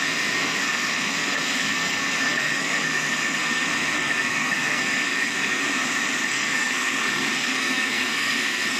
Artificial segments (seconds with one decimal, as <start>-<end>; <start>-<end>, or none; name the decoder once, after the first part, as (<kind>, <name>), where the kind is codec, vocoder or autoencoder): 0.0-5.6 (codec, SNAC); 6.3-8.8